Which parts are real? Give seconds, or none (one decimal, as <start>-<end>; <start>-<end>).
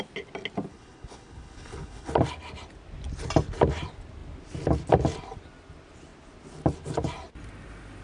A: 0.0-0.7; 2.1-8.0